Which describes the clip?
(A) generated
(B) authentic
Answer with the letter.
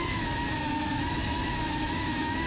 A